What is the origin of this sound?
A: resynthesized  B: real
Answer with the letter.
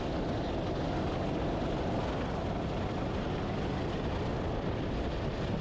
B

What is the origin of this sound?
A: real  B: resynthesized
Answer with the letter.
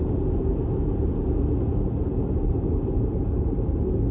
A